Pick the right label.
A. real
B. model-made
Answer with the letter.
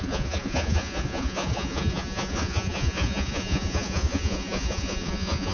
B